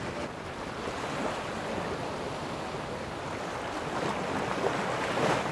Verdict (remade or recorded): recorded